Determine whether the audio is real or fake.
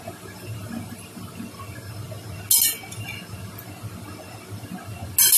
real